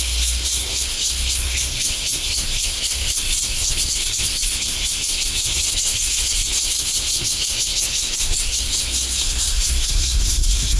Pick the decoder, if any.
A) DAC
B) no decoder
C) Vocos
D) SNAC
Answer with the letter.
D